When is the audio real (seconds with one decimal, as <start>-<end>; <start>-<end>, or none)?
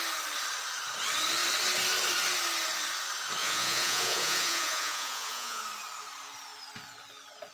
0.0-3.4; 5.6-7.5